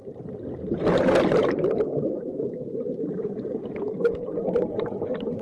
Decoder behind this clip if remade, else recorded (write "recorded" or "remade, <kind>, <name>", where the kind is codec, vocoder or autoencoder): remade, vocoder, BigVGAN v2